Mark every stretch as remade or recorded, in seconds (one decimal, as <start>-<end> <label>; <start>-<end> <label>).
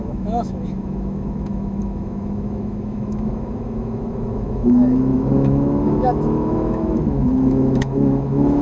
0.0-8.6 remade